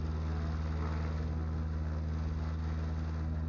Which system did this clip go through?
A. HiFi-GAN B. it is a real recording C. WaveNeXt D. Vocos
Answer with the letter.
B